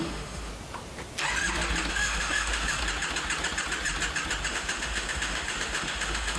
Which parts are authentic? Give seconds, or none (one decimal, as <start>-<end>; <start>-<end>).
0.5-1.9; 2.8-4.5